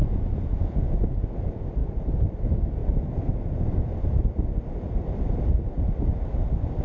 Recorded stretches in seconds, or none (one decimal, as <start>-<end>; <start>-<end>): 1.0-1.8; 2.3-6.8